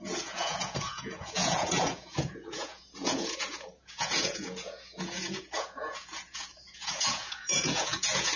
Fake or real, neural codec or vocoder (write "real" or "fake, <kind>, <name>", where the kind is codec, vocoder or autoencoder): fake, vocoder, Vocos